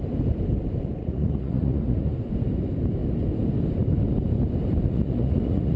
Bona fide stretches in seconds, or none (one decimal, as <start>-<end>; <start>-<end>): 0.0-1.0; 2.1-4.8